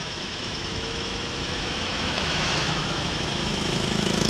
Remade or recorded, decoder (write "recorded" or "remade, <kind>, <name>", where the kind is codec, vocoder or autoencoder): remade, autoencoder, DAC-VAE